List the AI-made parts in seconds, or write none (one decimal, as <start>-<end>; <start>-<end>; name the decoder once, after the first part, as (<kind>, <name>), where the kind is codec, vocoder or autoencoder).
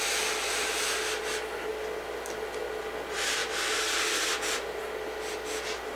3.4-4.8 (vocoder, BigVGAN v2)